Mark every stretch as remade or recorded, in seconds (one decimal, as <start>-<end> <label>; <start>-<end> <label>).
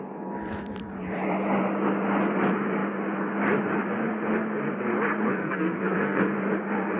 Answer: 0.0-5.3 recorded; 5.3-6.2 remade; 6.2-7.0 recorded